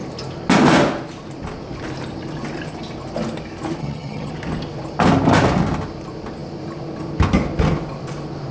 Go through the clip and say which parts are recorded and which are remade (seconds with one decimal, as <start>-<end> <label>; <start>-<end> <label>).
0.0-3.8 recorded; 3.8-4.3 remade; 4.3-8.5 recorded